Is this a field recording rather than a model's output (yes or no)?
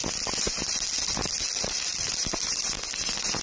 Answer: yes